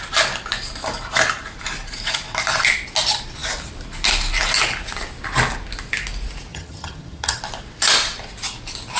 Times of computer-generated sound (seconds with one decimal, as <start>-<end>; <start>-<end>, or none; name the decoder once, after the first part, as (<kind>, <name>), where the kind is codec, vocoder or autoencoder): 6.5-7.4 (vocoder, HiFi-GAN)